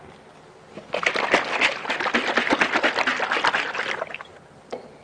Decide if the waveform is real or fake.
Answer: real